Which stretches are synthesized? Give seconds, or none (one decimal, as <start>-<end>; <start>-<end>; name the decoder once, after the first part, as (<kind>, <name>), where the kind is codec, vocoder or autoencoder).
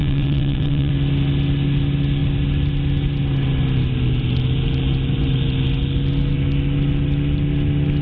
0.0-0.9 (vocoder, WaveNeXt)